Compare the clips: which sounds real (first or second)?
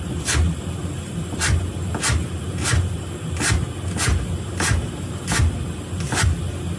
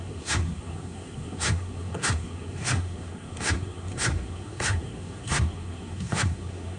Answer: first